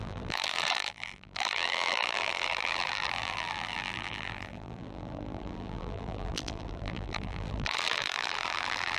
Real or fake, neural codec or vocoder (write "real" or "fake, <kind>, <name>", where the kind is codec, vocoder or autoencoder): fake, vocoder, BigVGAN v2